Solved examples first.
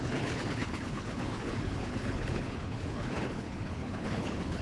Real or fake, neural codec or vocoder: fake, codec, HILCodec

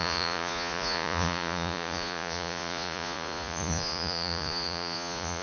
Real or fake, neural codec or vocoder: fake, vocoder, Vocos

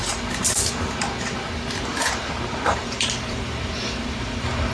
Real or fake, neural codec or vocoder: fake, vocoder, BigVGAN v2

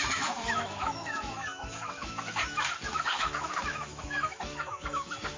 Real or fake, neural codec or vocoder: fake, autoencoder, DAC-VAE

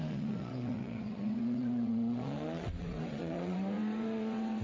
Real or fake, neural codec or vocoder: fake, vocoder, WaveNeXt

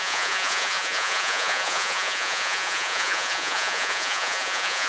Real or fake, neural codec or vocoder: fake, vocoder, Vocos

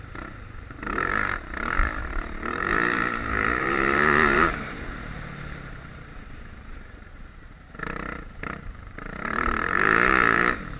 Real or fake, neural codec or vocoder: fake, vocoder, BigVGAN v2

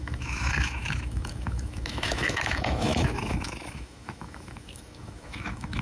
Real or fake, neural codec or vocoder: fake, autoencoder, DAC-VAE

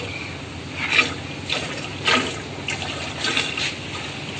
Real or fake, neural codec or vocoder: real